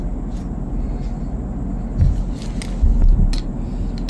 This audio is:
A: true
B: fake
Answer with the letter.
A